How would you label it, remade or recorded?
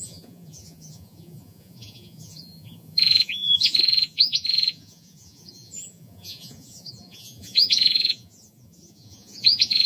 remade